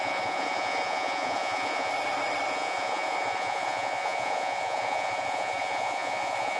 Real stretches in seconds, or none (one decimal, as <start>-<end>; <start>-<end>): 1.9-2.5